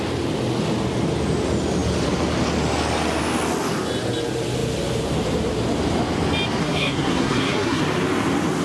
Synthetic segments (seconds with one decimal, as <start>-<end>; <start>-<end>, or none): 6.6-7.8

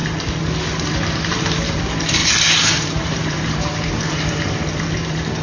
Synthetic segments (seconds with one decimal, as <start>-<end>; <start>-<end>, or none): 1.3-5.4

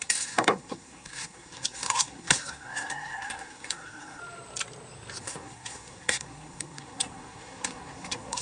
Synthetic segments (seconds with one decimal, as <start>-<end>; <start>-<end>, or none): 0.0-4.2; 5.2-8.4

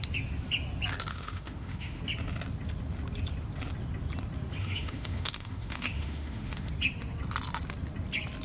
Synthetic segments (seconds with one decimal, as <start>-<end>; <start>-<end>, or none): 1.1-2.0; 4.6-6.7

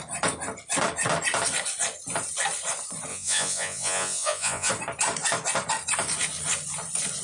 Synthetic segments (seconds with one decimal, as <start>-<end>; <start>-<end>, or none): 3.1-4.7

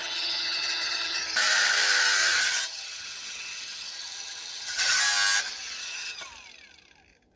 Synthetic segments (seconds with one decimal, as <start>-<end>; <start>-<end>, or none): 0.0-1.2; 2.2-5.0; 5.8-6.3

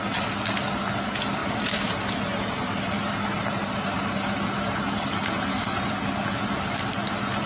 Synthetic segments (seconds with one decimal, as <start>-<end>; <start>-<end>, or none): 1.4-5.9

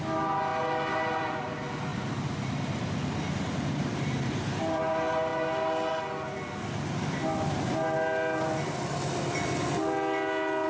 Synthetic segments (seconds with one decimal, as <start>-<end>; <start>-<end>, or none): 1.9-4.8